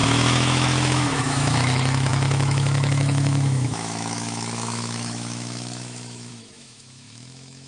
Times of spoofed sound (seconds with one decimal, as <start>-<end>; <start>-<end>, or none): 0.0-7.7